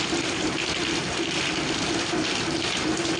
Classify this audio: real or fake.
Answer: fake